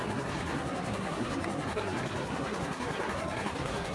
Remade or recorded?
remade